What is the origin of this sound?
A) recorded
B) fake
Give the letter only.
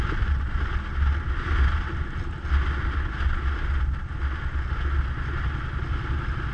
A